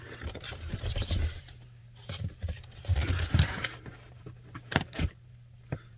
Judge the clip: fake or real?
fake